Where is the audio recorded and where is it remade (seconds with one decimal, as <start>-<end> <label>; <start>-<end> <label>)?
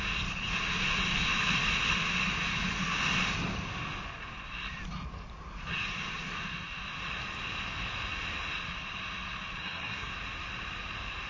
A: 0.0-9.6 recorded; 9.6-10.1 remade; 10.1-11.3 recorded